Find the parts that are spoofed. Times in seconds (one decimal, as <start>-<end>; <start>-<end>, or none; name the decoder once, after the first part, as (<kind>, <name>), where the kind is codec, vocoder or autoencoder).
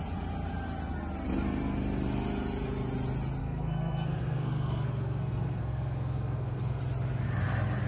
3.4-6.8 (codec, SNAC)